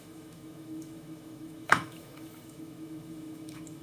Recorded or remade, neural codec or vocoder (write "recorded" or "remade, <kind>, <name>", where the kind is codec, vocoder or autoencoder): remade, autoencoder, DAC-VAE